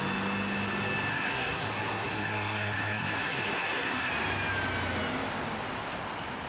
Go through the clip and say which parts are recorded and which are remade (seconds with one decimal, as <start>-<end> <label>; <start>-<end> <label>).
0.0-1.1 recorded; 1.1-4.1 remade; 4.1-6.5 recorded